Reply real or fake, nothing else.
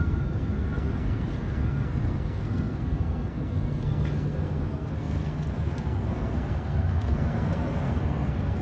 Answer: fake